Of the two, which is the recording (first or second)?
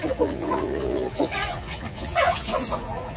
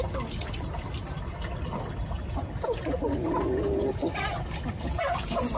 second